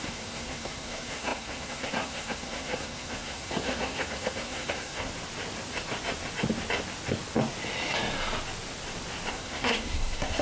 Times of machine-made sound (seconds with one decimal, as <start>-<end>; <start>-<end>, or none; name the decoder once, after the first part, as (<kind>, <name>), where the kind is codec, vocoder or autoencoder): 0.0-5.1 (codec, SNAC); 9.3-10.4